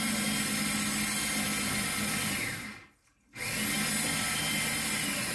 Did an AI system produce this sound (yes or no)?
no